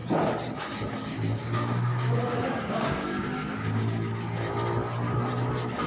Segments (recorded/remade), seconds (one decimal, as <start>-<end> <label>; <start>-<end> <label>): 0.0-1.1 recorded; 1.1-4.5 remade; 4.5-5.9 recorded